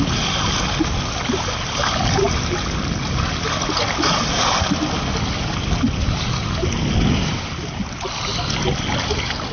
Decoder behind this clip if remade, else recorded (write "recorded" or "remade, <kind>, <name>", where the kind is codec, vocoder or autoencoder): recorded